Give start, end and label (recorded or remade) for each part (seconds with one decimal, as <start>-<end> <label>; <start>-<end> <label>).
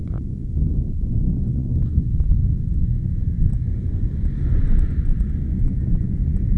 0.0-0.4 remade; 0.4-1.2 recorded; 1.2-2.1 remade; 2.1-2.8 recorded; 2.8-6.6 remade